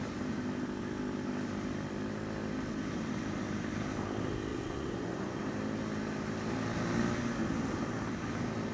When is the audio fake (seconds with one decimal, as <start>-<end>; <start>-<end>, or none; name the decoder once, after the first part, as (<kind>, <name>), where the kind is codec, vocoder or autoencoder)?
4.5-5.4 (vocoder, Vocos)